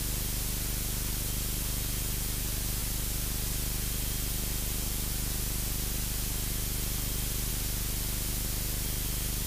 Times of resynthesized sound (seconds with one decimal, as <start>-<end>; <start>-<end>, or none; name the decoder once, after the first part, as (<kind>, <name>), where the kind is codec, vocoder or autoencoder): none